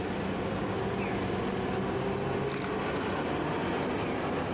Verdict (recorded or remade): recorded